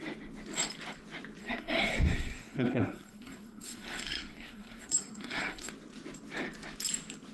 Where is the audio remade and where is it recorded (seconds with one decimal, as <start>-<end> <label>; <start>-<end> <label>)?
0.0-1.4 recorded; 1.4-5.7 remade; 5.7-7.3 recorded